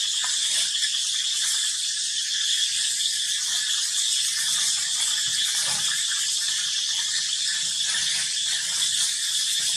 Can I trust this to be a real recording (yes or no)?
yes